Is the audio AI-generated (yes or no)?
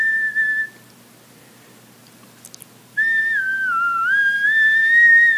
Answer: no